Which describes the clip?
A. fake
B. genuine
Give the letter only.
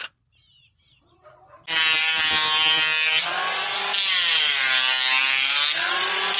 B